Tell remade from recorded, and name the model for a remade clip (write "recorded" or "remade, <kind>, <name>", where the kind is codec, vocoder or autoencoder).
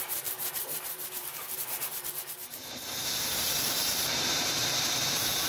remade, vocoder, BigVGAN v2